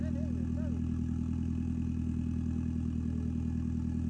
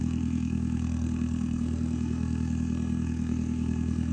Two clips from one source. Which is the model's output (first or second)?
second